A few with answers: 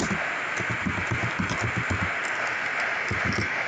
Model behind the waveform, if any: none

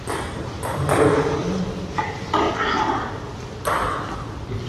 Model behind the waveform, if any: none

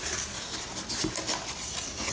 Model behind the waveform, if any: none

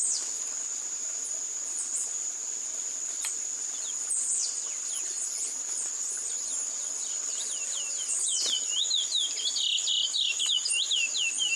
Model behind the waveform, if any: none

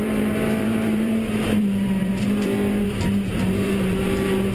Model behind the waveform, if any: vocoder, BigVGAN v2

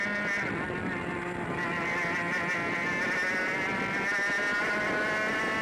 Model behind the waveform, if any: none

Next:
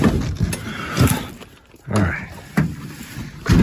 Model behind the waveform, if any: none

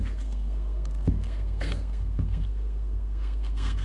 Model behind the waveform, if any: codec, SNAC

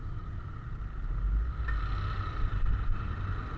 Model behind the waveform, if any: none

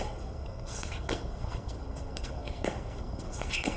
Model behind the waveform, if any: codec, SNAC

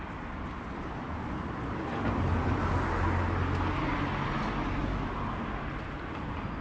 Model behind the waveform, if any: none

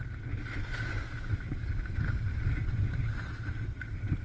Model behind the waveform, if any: none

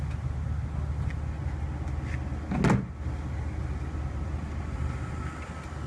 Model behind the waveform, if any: none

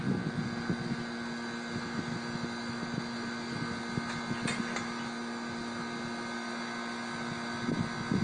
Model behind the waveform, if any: none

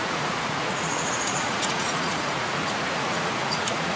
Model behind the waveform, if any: vocoder, Vocos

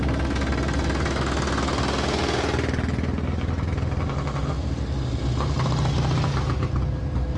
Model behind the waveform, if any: none